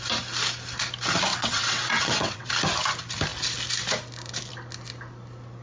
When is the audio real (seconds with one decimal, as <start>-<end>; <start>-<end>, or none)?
0.0-1.3; 2.5-5.6

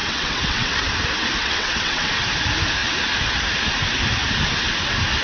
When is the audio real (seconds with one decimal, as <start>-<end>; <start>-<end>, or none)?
0.8-1.4; 2.1-5.2

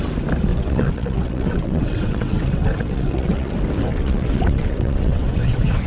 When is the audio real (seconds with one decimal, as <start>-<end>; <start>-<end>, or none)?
0.0-0.5; 3.5-3.9

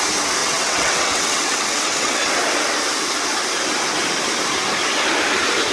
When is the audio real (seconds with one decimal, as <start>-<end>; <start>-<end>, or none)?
0.0-0.4; 2.3-5.7

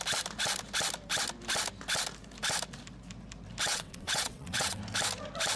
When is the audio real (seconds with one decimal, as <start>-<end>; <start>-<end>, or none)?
0.0-3.7; 4.8-5.6

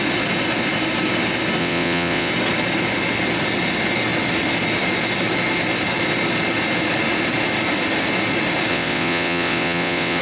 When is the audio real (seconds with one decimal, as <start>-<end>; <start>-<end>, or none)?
0.0-1.6; 2.3-8.7